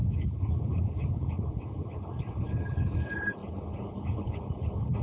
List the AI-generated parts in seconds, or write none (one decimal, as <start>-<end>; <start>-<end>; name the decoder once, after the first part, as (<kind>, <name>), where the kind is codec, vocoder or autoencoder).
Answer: 0.0-5.0 (codec, HILCodec)